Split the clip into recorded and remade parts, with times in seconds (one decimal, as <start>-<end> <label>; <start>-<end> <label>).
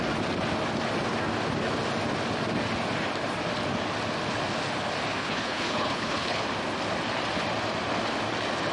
0.0-5.2 recorded; 5.2-6.4 remade; 6.4-8.7 recorded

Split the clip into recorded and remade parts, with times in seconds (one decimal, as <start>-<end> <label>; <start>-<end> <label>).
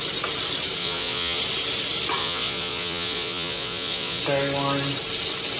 0.0-0.8 recorded; 0.8-1.4 remade; 1.4-2.2 recorded; 2.2-4.2 remade; 4.2-5.6 recorded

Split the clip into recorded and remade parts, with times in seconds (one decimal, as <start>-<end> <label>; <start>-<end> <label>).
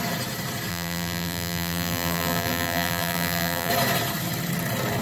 0.0-0.7 recorded; 0.7-3.7 remade; 3.7-5.0 recorded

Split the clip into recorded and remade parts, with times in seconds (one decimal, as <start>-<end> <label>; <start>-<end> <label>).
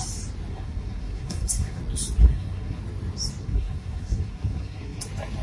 0.0-0.5 recorded; 0.5-1.8 remade; 1.8-2.2 recorded; 2.2-2.8 remade; 2.8-3.4 recorded; 3.4-5.0 remade; 5.0-5.4 recorded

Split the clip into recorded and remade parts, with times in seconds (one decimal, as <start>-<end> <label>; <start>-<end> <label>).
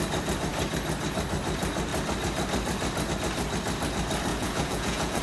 0.0-4.3 recorded; 4.3-5.2 remade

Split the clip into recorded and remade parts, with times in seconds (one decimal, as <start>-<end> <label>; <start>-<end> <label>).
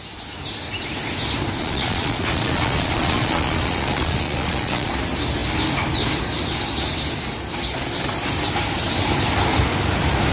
0.0-1.6 recorded; 1.6-4.9 remade; 4.9-10.3 recorded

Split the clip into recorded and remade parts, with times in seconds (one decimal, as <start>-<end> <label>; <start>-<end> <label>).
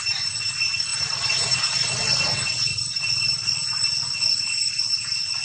0.0-5.4 recorded